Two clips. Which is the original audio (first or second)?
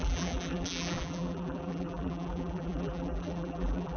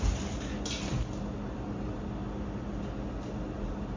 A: second